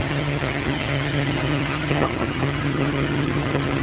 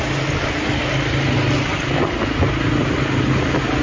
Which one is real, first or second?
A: second